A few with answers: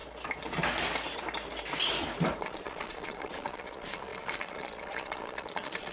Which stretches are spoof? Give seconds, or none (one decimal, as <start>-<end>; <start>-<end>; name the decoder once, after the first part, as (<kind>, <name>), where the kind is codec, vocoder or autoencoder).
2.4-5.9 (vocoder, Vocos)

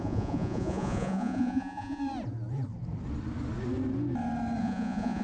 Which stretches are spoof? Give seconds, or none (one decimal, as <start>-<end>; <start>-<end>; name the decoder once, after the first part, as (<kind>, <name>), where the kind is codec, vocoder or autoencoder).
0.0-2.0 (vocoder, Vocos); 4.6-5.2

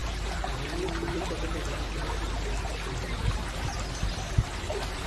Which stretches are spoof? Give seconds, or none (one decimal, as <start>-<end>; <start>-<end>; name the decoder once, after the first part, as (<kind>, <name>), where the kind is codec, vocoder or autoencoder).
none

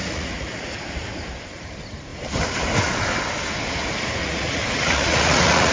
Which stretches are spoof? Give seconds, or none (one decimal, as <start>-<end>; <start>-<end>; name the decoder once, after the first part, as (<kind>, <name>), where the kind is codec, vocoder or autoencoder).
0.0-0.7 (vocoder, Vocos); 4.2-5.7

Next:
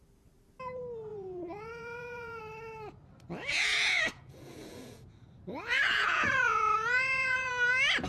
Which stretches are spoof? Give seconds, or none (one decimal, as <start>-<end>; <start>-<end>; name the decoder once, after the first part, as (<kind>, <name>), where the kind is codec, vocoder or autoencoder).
1.1-2.4 (vocoder, Vocos); 3.5-7.5

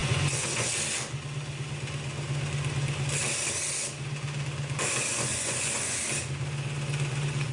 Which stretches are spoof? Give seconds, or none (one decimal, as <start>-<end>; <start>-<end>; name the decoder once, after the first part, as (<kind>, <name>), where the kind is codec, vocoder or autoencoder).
0.0-0.7 (vocoder, Vocos); 5.1-6.0